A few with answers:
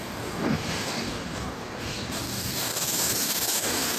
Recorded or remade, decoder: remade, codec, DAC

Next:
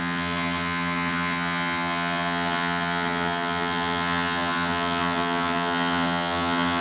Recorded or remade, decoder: remade, vocoder, HiFi-GAN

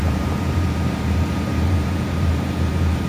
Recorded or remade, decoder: remade, vocoder, BigVGAN v2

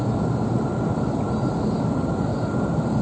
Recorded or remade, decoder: remade, vocoder, BigVGAN v2